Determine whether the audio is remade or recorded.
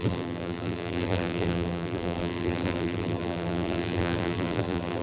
remade